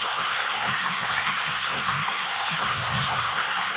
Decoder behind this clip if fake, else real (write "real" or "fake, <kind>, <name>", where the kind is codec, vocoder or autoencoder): fake, codec, SNAC